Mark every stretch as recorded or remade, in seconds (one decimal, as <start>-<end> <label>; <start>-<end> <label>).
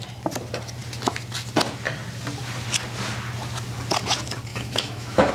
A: 0.0-4.5 recorded; 4.5-5.3 remade